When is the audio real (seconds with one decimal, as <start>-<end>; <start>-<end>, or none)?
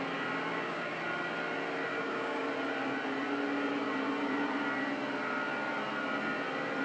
0.0-0.5; 1.0-1.9; 2.5-6.8